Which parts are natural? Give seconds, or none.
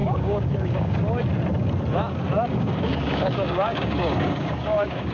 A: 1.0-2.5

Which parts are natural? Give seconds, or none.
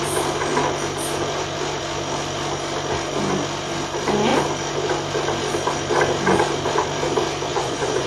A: 0.0-7.5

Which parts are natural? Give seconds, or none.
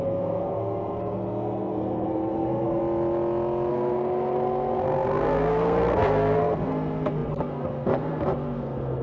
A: 2.8-3.7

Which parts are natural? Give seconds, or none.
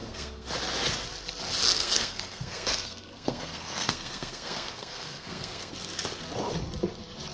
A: 0.5-1.7; 5.7-7.3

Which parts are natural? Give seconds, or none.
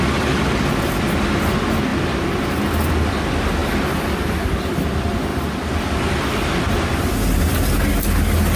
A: 0.0-8.6